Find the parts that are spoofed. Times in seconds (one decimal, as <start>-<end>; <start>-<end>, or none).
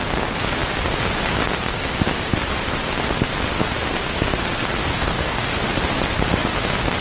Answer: 4.8-5.5